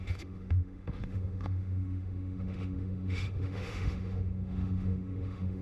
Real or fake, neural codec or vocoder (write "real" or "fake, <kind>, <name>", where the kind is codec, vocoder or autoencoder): fake, autoencoder, DAC-VAE